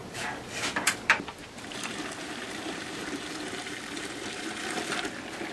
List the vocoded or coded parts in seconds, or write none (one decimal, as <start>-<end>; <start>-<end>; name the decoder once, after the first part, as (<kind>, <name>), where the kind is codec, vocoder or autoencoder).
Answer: 0.0-5.5 (vocoder, BigVGAN v2)